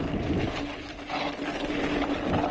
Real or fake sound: real